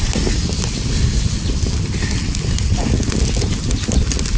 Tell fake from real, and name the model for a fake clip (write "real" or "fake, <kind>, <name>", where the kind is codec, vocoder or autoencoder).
real